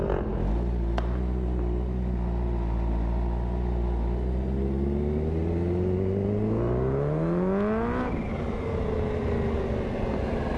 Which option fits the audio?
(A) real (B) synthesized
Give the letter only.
A